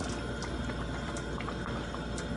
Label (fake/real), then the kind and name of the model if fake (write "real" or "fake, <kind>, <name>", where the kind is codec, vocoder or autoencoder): real